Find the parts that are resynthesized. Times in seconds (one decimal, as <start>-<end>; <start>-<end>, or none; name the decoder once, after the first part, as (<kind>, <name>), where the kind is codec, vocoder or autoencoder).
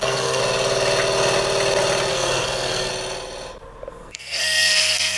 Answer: 0.0-0.4 (codec, SNAC); 2.1-2.9; 3.9-5.2